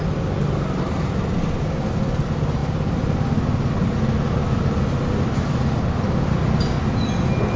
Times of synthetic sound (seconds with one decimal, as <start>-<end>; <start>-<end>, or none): none